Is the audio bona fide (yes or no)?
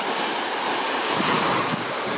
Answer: yes